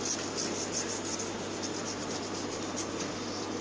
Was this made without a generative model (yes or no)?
yes